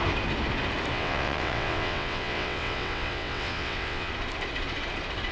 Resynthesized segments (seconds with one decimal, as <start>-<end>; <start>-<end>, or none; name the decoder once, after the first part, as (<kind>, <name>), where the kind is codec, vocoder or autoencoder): 0.9-4.1 (vocoder, WaveNeXt)